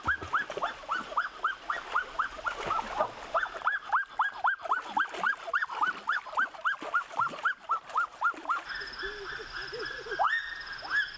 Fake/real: real